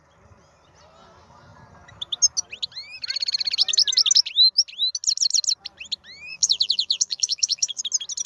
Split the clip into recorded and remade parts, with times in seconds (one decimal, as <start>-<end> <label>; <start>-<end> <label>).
0.0-6.3 recorded; 6.3-7.8 remade; 7.8-8.3 recorded